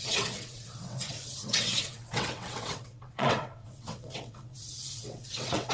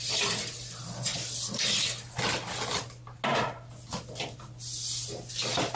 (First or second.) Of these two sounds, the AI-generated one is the first